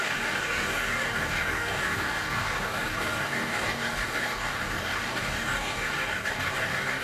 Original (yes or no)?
no